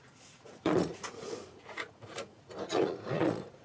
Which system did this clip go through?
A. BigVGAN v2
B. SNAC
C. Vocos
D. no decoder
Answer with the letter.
C